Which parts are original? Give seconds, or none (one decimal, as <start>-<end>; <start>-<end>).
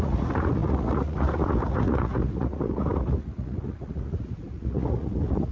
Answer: none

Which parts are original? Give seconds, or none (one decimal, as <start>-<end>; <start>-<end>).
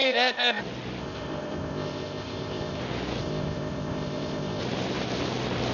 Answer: 0.6-1.0; 2.8-3.2; 4.6-5.7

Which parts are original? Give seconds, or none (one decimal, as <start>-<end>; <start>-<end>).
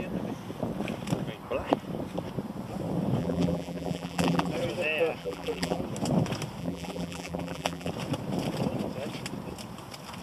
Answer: 0.0-3.2; 4.5-5.2; 5.8-6.6; 7.9-10.2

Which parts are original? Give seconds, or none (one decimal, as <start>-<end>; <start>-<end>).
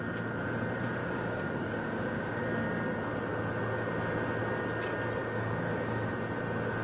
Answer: 0.0-1.0; 2.4-5.2; 6.1-6.8